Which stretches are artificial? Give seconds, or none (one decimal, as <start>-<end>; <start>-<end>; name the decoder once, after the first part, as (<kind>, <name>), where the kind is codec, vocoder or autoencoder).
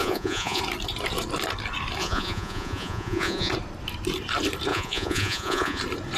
0.0-0.6 (vocoder, Vocos); 2.0-3.5; 4.7-5.8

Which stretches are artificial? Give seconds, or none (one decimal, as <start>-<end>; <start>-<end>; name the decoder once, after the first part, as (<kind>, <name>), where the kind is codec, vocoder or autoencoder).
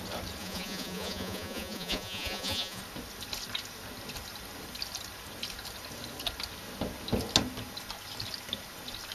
0.4-2.8 (vocoder, Vocos)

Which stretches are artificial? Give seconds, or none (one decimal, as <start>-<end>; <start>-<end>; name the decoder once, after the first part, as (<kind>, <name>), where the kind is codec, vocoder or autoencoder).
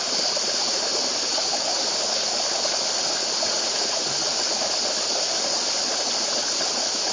3.2-4.1 (vocoder, Vocos)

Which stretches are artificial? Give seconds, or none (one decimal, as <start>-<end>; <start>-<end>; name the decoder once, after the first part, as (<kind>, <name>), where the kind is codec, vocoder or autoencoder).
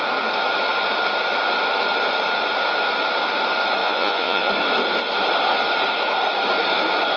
3.8-4.5 (vocoder, Vocos)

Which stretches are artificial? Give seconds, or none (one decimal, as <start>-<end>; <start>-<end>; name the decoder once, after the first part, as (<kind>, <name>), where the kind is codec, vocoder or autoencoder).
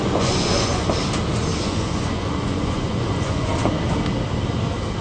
0.0-0.8 (vocoder, Vocos); 1.6-3.5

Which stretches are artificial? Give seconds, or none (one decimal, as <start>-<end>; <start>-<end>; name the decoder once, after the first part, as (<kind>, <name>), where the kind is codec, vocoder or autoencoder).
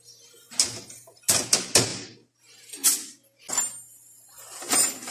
none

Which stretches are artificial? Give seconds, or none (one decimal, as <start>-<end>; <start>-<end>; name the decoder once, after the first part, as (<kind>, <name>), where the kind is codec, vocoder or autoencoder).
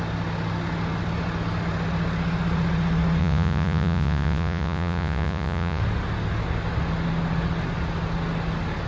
3.2-5.8 (vocoder, Vocos)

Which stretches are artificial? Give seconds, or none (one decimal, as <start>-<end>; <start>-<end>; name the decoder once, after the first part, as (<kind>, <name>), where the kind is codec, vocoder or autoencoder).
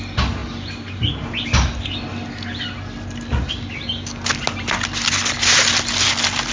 none